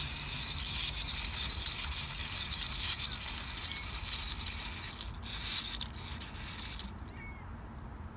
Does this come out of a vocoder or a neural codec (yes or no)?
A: no